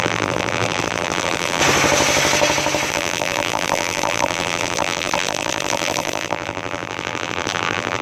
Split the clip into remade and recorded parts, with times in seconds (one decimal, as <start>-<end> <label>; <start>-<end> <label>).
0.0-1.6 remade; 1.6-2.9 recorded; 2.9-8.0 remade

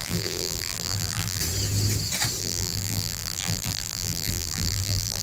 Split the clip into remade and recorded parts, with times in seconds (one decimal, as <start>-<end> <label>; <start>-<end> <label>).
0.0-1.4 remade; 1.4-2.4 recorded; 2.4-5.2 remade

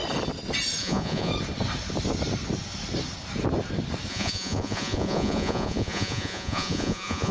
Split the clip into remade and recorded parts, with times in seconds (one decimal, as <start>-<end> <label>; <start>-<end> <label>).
0.0-0.8 recorded; 0.8-1.3 remade; 1.3-4.1 recorded; 4.1-7.3 remade

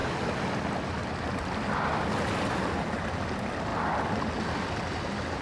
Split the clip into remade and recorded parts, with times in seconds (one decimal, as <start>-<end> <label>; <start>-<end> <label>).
0.0-5.4 recorded